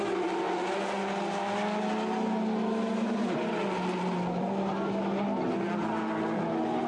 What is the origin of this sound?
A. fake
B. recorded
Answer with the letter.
B